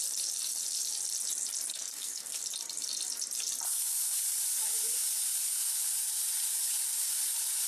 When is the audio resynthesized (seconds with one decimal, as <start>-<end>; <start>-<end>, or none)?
1.7-2.4